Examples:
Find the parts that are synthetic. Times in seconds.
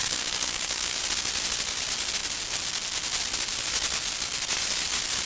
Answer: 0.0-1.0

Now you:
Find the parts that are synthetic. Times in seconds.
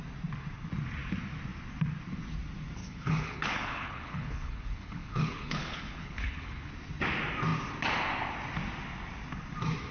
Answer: 2.8-6.7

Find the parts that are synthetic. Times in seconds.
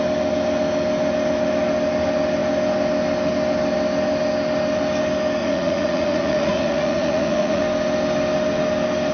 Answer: 5.4-7.6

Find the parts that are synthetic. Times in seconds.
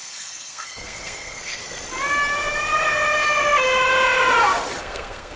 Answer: 0.0-1.6; 4.8-5.4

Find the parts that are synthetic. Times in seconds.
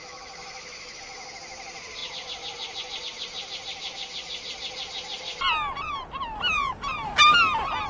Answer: 0.0-1.3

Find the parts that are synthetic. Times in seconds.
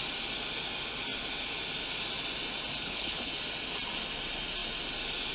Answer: 2.8-3.3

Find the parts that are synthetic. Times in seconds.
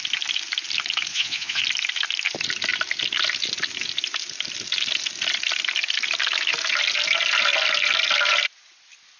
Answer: 1.1-1.6